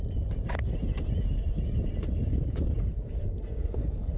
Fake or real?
fake